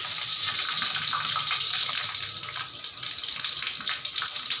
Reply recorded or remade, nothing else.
recorded